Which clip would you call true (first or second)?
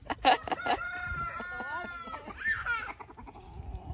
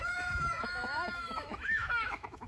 first